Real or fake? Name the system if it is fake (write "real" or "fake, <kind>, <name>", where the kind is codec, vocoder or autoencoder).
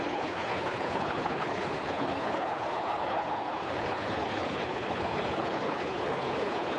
fake, codec, HILCodec